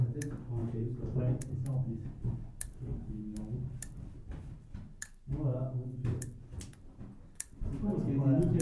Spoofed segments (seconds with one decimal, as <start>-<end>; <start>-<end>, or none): 0.6-1.2